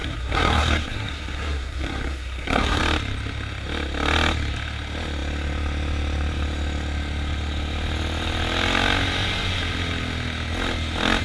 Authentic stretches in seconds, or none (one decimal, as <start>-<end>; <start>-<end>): 2.8-11.2